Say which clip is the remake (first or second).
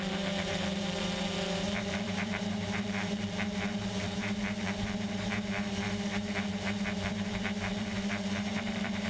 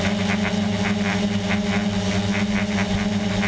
first